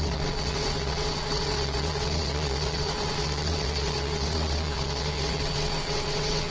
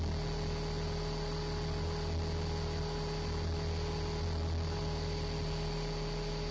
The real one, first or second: second